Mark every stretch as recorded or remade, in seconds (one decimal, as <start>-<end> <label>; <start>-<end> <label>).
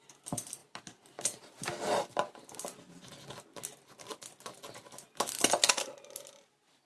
0.0-6.9 recorded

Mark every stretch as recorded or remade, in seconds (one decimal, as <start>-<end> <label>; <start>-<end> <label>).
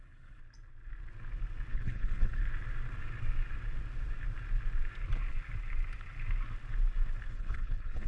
0.0-0.4 remade; 0.4-1.7 recorded; 1.7-2.4 remade; 2.4-7.3 recorded; 7.3-8.1 remade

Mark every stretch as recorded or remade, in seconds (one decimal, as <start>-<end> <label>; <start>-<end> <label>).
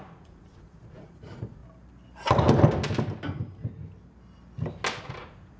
0.0-1.6 remade; 1.6-5.0 recorded; 5.0-5.6 remade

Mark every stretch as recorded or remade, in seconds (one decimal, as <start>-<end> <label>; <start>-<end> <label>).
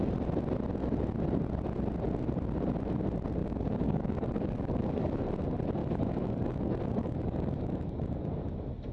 0.0-3.4 recorded; 3.4-5.2 remade; 5.2-5.8 recorded; 5.8-7.9 remade; 7.9-8.9 recorded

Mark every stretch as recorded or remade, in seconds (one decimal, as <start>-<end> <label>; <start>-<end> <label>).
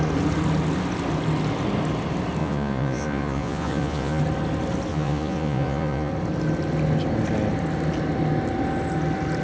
0.0-2.4 recorded; 2.4-4.2 remade; 4.2-4.9 recorded; 4.9-6.1 remade; 6.1-9.4 recorded